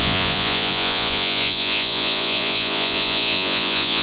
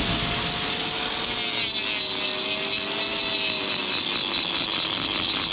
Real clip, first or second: second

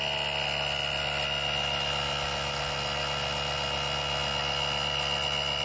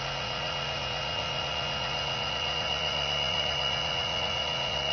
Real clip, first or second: first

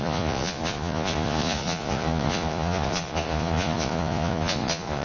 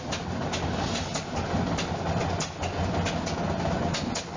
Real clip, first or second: second